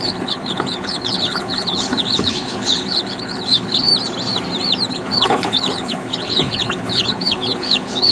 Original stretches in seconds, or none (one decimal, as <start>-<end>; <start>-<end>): 3.9-4.9